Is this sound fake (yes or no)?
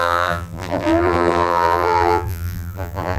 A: yes